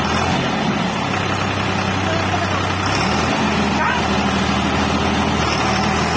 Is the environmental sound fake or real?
real